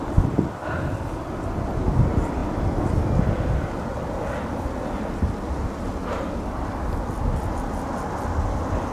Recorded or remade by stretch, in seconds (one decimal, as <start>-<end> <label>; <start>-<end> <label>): 0.0-8.9 recorded